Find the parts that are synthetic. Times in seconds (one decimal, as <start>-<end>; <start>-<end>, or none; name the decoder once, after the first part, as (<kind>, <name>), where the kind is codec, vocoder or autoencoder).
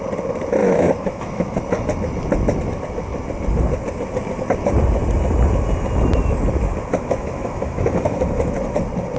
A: 0.6-1.6 (autoencoder, DAC-VAE); 6.9-8.2